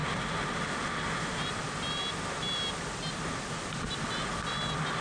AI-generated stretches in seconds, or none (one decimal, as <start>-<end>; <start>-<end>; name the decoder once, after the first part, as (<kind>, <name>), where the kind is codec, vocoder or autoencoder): 0.0-0.8 (vocoder, BigVGAN v2)